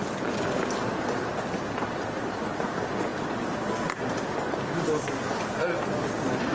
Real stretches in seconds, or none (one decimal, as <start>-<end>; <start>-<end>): 0.0-6.5